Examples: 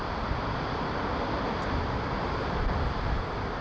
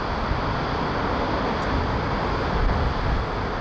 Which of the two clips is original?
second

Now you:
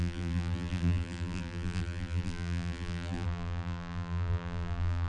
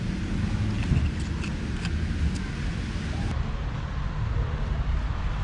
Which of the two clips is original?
second